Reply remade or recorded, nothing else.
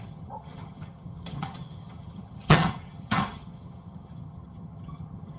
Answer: remade